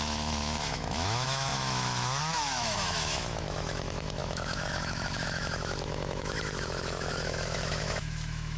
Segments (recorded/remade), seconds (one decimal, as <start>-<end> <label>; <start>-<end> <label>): 0.0-8.6 remade